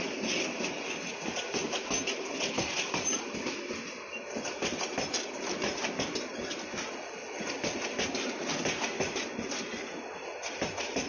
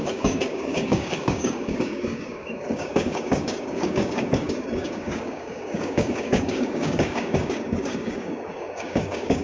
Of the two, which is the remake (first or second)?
second